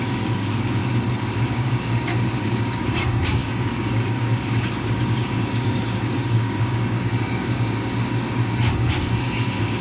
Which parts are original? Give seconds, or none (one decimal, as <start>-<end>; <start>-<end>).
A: 0.8-1.4